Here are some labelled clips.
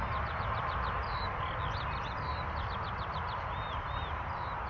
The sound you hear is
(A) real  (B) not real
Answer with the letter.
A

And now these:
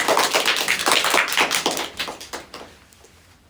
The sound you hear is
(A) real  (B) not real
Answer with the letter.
A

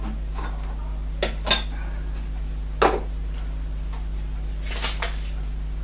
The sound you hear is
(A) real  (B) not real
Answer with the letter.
A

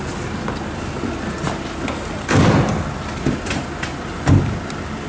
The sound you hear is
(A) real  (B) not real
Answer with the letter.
A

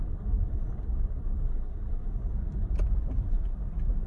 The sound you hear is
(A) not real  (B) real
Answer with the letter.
B